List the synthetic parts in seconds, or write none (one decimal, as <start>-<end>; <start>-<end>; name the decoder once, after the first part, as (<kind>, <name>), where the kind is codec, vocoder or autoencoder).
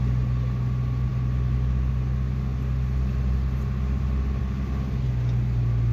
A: none